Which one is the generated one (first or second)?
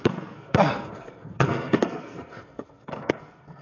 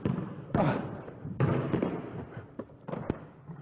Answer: first